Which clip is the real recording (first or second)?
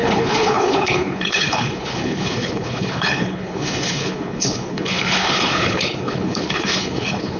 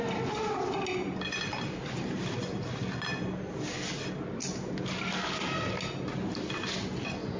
second